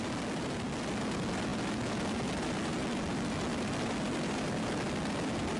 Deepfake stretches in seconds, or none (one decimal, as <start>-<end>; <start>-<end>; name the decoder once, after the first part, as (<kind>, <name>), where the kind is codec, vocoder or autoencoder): none